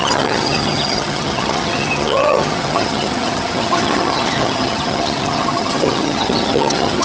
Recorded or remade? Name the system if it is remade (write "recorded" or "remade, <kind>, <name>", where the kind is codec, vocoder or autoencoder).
remade, vocoder, HiFi-GAN